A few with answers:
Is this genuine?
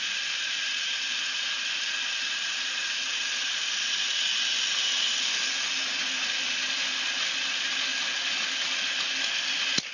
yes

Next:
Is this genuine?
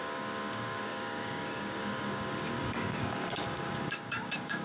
no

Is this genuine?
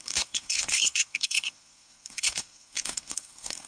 no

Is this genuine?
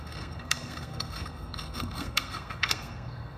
no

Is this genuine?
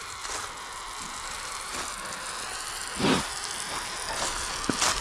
yes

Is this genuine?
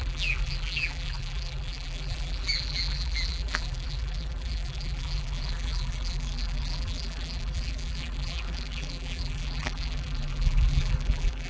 no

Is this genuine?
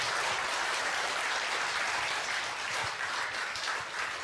no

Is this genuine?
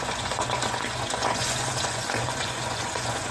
no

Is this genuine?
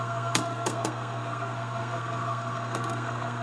no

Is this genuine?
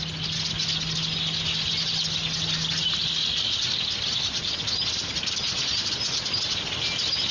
yes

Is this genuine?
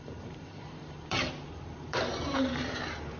no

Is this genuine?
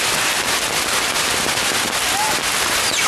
yes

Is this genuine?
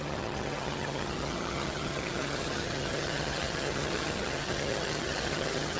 no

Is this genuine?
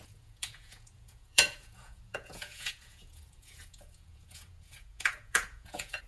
no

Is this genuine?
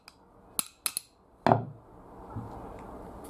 yes